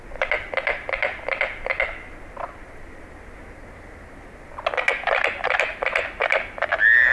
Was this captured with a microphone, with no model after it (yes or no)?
yes